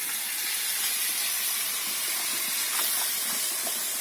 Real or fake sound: real